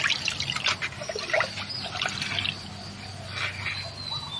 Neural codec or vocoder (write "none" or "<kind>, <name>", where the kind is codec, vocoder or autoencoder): none